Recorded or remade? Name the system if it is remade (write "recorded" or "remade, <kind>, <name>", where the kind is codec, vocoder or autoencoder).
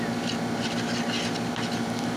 recorded